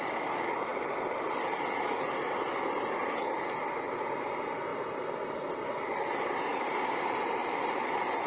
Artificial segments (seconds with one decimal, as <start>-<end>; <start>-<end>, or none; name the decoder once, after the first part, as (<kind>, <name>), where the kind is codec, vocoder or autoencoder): 4.7-5.3 (vocoder, BigVGAN v2); 6.5-7.3